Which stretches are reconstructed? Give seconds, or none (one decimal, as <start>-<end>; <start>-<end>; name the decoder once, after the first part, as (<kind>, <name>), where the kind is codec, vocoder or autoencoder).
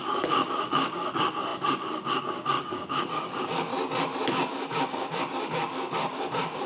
0.0-3.7 (codec, DAC); 4.3-6.7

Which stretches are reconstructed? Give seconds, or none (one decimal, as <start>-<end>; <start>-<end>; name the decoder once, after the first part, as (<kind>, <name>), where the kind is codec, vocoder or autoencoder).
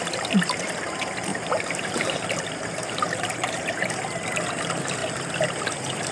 1.3-3.6 (vocoder, BigVGAN v2)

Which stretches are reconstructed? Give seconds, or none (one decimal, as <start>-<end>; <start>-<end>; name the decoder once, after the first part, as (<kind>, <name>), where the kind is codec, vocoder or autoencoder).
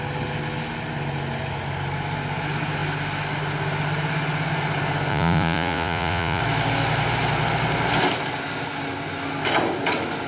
5.1-6.4 (vocoder, Vocos)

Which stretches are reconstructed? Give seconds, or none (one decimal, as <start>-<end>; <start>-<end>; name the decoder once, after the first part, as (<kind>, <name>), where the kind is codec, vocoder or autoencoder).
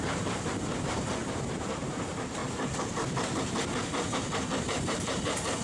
0.0-2.4 (vocoder, BigVGAN v2); 4.6-5.6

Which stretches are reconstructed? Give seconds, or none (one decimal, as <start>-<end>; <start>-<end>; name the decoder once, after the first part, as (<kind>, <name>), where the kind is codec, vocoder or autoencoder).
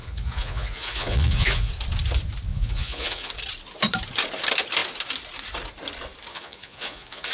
0.0-1.7 (vocoder, Vocos); 2.5-3.3; 6.3-7.3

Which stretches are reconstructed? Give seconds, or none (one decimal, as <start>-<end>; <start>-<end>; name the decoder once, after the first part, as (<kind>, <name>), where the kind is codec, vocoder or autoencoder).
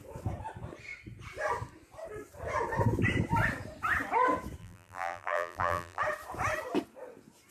4.6-6.0 (vocoder, BigVGAN v2)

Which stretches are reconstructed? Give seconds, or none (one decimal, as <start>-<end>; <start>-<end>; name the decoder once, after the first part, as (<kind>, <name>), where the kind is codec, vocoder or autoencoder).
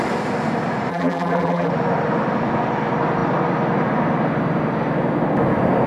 0.9-1.7 (vocoder, BigVGAN v2)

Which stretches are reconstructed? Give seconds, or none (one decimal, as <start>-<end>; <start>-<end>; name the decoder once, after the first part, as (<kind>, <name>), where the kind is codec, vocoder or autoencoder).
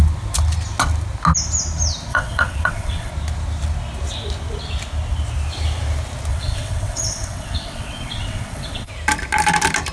2.1-3.1 (vocoder, WaveNeXt); 6.3-8.9